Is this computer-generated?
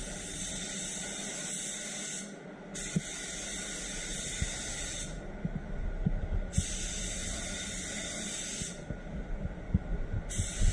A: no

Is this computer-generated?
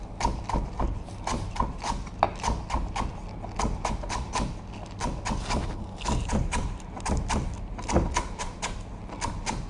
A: no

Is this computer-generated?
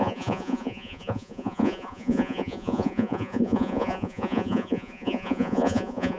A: yes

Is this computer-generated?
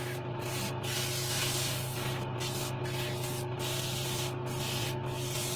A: no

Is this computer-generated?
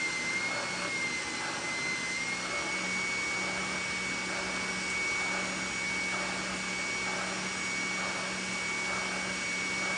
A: no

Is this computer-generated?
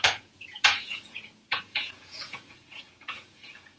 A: yes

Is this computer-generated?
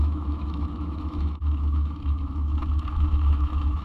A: yes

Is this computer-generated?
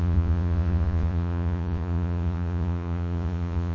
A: yes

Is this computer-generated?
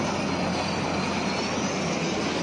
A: no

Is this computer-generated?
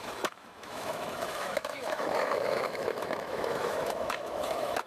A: yes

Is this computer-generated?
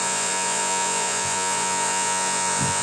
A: yes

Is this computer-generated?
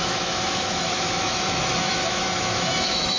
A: yes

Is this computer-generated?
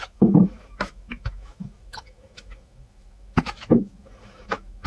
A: yes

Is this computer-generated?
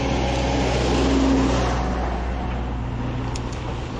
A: no